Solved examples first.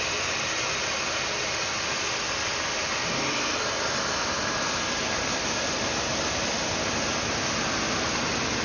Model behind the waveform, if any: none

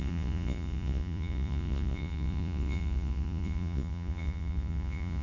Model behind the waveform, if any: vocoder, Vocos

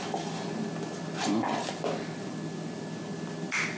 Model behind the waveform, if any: none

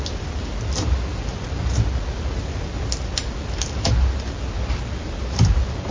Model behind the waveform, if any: none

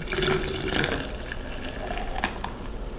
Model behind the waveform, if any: none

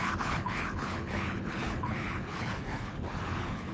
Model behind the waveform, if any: codec, HILCodec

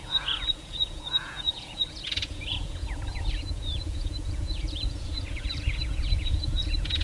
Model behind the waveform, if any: vocoder, Vocos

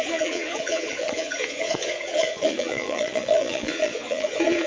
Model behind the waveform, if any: vocoder, Vocos